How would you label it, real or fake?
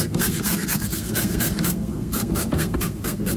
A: fake